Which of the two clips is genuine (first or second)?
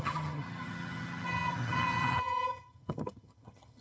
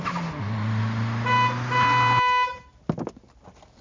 second